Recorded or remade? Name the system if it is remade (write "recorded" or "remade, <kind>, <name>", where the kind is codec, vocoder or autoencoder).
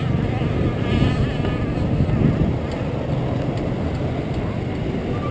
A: recorded